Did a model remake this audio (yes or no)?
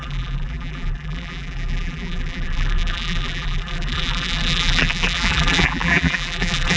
yes